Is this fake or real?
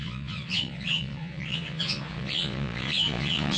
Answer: fake